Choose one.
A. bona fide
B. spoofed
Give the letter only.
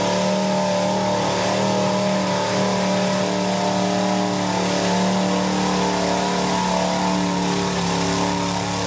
A